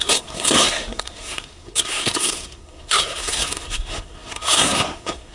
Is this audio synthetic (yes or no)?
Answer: yes